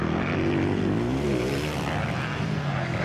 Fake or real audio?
real